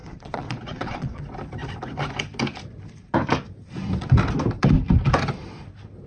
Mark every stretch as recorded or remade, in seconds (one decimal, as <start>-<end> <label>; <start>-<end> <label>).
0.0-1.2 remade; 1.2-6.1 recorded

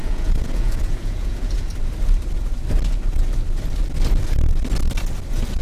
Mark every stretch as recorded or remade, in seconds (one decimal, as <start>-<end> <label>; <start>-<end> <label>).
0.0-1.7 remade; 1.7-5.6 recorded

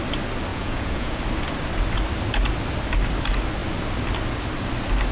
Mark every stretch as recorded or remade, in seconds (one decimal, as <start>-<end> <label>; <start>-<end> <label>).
0.0-0.5 recorded; 0.5-1.2 remade; 1.2-5.1 recorded

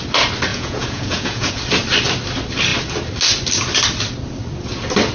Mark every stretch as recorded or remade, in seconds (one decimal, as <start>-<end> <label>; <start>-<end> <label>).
0.0-0.5 recorded; 0.5-1.5 remade; 1.5-5.1 recorded

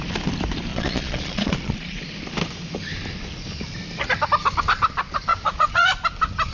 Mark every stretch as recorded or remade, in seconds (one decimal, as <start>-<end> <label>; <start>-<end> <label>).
0.0-0.7 recorded; 0.7-2.0 remade; 2.0-5.3 recorded; 5.3-5.9 remade; 5.9-6.5 recorded

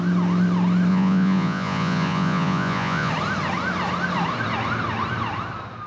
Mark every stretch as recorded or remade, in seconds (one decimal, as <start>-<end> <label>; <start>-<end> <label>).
0.0-0.9 recorded; 0.9-3.1 remade; 3.1-5.9 recorded